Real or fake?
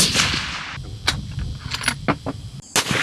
real